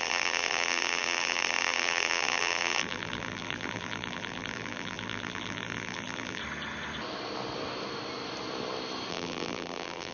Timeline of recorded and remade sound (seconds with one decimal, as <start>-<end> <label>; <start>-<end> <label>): 0.0-6.4 remade; 6.4-9.1 recorded; 9.1-10.1 remade